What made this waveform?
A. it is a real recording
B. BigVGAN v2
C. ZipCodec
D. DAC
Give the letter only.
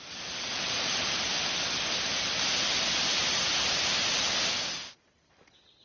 A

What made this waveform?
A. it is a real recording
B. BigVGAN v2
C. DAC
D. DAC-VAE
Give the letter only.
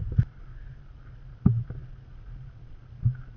A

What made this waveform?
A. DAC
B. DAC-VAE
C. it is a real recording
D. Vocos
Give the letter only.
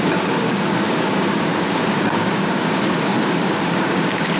A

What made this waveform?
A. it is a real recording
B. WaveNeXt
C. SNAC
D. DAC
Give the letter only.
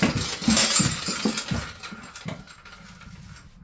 A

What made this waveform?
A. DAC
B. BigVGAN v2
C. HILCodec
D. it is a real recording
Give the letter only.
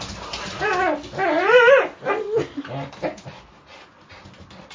D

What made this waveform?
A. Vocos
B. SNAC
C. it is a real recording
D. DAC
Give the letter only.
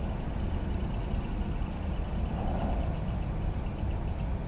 C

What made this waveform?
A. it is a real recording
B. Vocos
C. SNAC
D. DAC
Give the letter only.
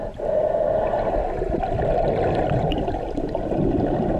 A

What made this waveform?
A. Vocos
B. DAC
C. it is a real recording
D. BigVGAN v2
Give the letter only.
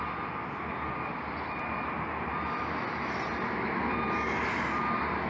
C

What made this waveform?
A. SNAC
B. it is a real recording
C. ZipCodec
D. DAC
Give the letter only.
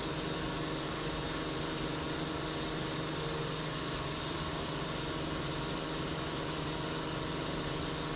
B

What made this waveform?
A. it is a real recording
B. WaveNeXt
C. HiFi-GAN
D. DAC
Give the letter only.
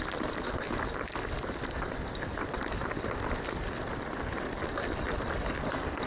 A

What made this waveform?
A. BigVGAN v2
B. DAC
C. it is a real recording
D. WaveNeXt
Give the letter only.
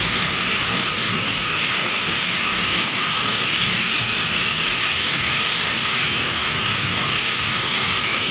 B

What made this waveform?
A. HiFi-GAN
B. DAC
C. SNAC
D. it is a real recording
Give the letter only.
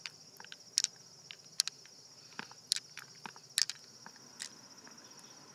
D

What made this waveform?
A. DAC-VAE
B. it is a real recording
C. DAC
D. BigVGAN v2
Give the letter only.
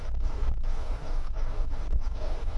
C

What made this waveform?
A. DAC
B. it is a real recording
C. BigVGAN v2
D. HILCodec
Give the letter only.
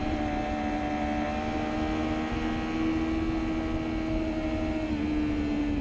B